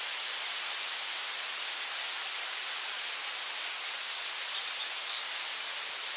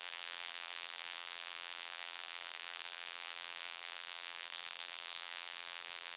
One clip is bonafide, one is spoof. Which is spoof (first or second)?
second